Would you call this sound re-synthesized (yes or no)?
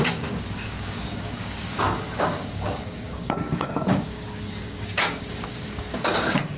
yes